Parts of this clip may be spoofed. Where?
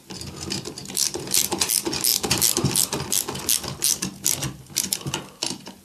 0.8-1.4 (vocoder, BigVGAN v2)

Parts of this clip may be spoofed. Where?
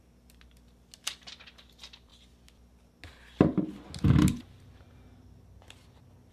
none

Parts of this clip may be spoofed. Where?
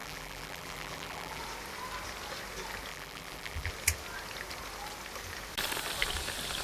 0.0-1.4 (vocoder, BigVGAN v2); 2.9-3.7